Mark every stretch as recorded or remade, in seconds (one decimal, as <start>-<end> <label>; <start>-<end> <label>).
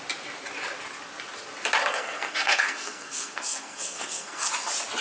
0.0-1.9 recorded; 1.9-4.5 remade; 4.5-5.0 recorded